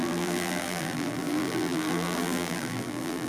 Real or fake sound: fake